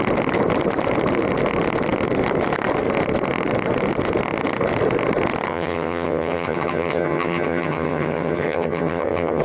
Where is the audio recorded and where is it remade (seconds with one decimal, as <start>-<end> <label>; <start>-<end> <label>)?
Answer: 0.0-5.5 recorded; 5.5-9.4 remade